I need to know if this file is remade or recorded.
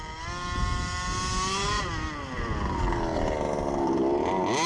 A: recorded